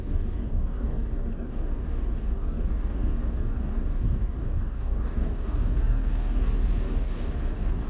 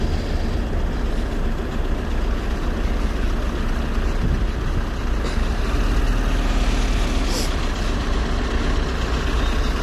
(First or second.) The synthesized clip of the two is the first